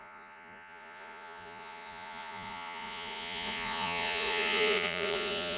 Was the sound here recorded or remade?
remade